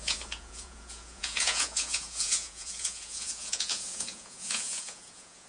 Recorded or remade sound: remade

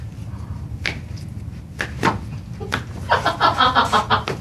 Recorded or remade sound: recorded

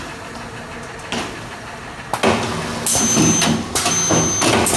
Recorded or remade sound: recorded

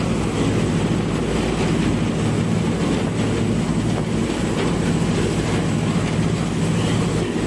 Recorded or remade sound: recorded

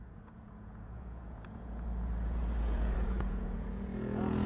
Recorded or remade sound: remade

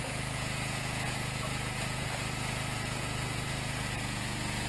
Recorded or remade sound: remade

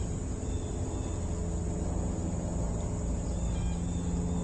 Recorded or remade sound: recorded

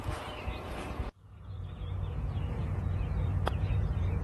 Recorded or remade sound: remade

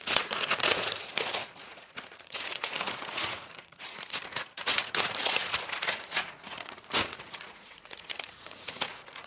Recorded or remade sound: remade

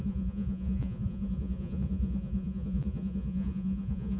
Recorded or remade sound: remade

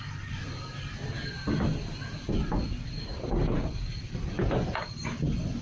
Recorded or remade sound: recorded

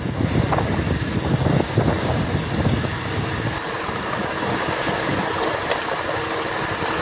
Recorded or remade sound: recorded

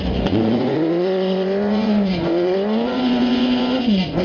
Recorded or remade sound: remade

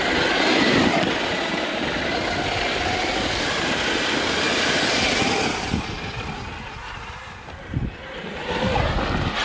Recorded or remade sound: recorded